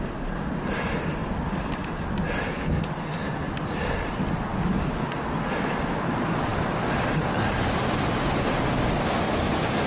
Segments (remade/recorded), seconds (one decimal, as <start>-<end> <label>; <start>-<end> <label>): 0.0-9.9 recorded

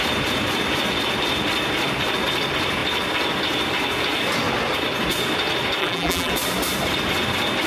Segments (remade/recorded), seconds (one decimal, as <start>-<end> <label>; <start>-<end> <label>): 0.0-5.8 recorded; 5.8-6.3 remade; 6.3-7.7 recorded

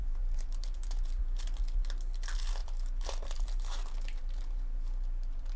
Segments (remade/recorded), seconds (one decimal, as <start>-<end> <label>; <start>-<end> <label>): 0.0-1.2 remade; 1.2-2.6 recorded; 2.6-5.6 remade

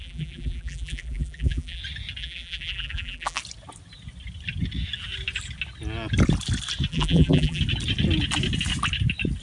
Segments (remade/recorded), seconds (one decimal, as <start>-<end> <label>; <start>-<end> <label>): 0.0-1.8 remade; 1.8-2.2 recorded; 2.2-3.4 remade; 3.4-6.9 recorded; 6.9-7.6 remade; 7.6-9.4 recorded

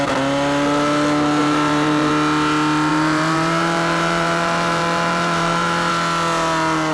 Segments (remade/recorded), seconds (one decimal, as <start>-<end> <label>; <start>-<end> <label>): 0.0-1.4 recorded; 1.4-2.1 remade; 2.1-2.9 recorded; 2.9-5.9 remade; 5.9-6.9 recorded

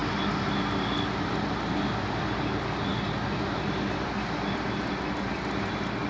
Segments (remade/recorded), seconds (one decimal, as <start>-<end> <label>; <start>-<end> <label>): 0.0-6.1 recorded

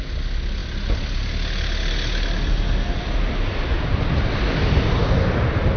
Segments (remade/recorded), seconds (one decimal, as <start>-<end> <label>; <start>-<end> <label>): 0.0-5.8 recorded